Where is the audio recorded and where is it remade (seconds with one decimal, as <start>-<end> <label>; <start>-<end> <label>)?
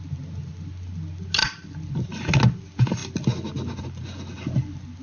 0.0-5.0 recorded